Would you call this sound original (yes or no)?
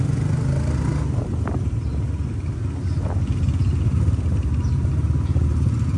yes